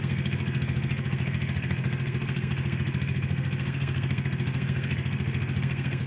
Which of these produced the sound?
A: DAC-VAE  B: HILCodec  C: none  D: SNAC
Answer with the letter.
D